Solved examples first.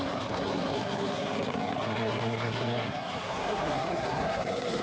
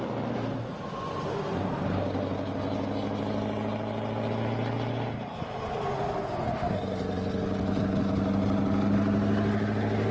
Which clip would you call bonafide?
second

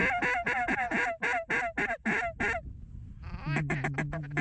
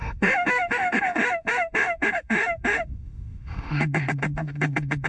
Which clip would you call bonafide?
first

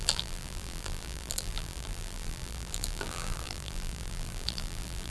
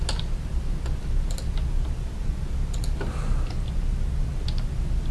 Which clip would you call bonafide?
second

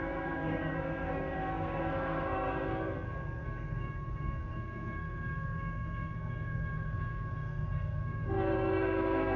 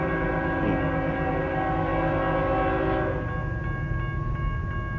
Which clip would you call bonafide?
second